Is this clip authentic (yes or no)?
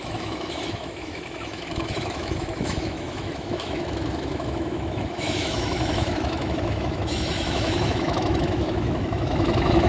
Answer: no